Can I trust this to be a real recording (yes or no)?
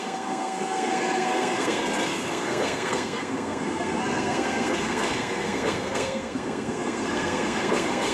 no